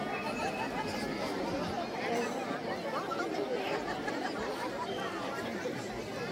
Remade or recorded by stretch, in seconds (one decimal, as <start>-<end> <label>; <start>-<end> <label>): 0.0-6.3 recorded